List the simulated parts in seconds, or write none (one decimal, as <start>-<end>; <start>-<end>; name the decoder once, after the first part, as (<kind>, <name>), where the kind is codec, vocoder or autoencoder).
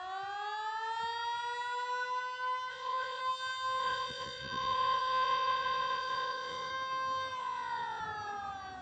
2.7-3.2 (vocoder, Vocos); 3.8-6.7; 7.4-8.0